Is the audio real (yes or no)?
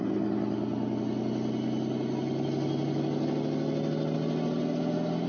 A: yes